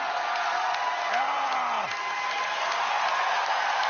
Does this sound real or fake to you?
real